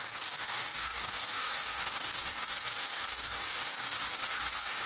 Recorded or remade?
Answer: remade